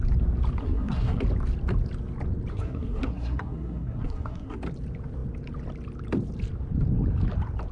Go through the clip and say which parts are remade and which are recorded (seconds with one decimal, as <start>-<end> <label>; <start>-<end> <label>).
0.0-0.6 recorded; 0.6-1.2 remade; 1.2-2.5 recorded; 2.5-4.6 remade; 4.6-7.7 recorded